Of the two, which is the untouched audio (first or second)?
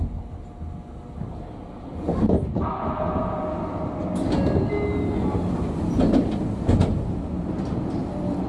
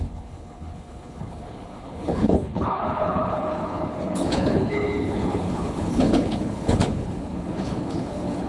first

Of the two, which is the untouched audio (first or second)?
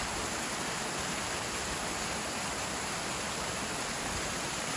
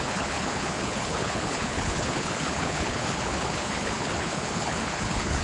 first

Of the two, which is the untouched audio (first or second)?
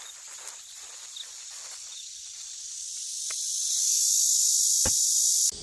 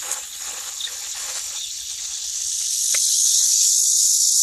first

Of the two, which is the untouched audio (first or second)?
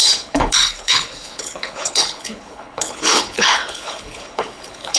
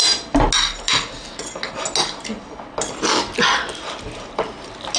second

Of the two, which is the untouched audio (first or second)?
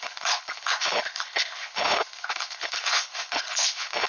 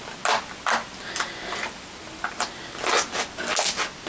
second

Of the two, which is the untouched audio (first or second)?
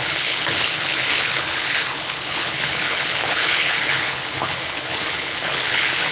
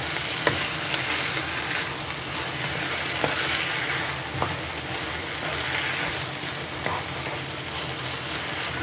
second